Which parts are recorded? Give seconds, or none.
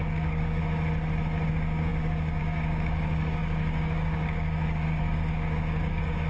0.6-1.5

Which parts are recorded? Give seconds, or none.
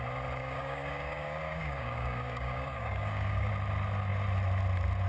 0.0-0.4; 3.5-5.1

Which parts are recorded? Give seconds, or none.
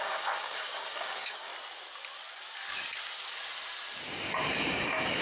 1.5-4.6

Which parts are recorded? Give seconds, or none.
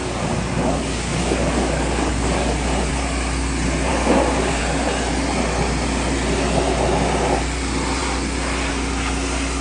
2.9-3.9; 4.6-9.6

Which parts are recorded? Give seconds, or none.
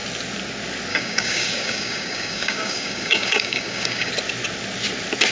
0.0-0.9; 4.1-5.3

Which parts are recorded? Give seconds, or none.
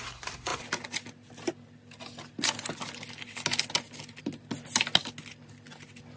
0.0-6.2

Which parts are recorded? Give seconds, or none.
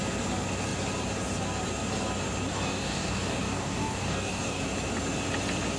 0.0-2.5; 4.6-5.8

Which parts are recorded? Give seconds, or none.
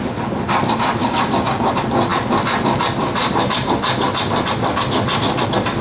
0.0-1.0; 1.7-5.8